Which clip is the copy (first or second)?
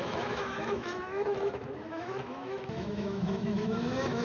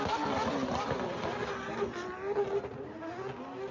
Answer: first